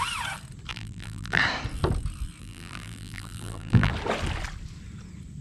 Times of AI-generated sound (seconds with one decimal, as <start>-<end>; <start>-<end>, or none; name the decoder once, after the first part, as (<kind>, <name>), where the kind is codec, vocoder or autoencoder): 0.7-1.4 (vocoder, BigVGAN v2); 2.4-3.9